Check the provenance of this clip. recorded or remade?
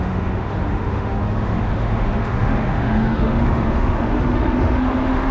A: remade